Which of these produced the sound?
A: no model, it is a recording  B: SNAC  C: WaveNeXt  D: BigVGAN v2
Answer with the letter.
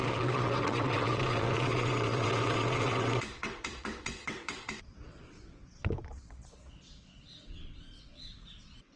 C